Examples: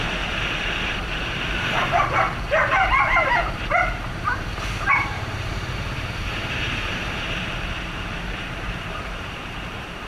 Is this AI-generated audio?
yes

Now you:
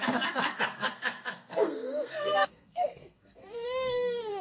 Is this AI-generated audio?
yes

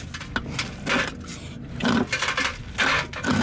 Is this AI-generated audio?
no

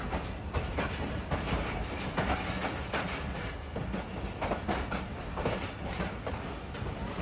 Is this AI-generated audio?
no